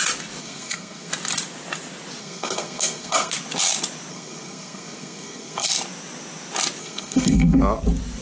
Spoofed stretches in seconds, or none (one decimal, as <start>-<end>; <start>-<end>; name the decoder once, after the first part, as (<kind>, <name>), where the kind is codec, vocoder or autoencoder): 0.4-1.1 (codec, SNAC); 2.2-3.3; 4.1-5.7; 6.8-7.6